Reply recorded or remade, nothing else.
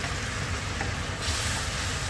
remade